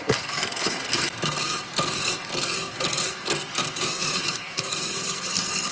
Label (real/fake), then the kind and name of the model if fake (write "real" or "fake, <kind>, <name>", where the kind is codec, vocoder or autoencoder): fake, codec, SNAC